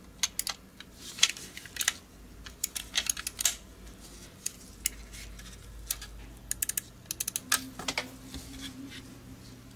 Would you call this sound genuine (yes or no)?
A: yes